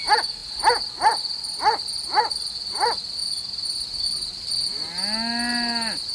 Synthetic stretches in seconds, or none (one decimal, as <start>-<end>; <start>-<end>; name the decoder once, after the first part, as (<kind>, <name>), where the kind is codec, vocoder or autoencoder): none